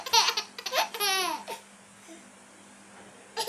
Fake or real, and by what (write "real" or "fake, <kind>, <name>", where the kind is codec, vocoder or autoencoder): real